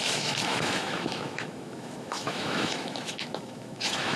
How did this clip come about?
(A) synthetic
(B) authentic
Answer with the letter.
A